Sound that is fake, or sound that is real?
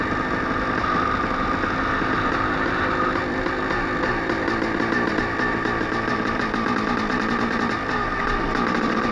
real